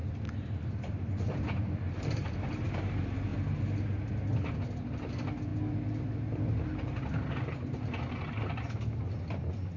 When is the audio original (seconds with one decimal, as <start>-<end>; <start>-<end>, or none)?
2.5-9.8